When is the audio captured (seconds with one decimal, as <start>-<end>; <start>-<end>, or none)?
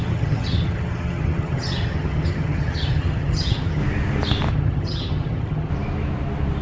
3.8-4.5; 5.7-6.6